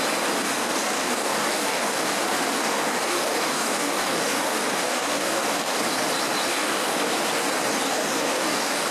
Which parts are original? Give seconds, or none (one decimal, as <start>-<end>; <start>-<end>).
0.0-0.4; 2.2-2.6; 5.8-6.5; 7.1-7.9